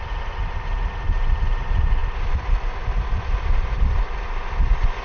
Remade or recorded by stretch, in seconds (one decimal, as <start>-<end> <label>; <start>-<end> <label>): 0.0-5.0 recorded